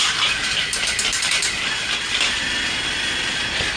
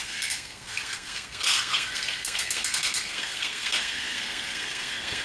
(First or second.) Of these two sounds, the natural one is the first